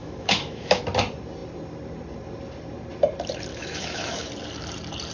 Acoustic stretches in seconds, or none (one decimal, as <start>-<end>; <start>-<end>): 0.8-3.5; 4.3-5.1